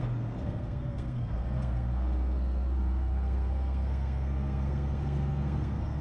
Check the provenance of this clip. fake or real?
fake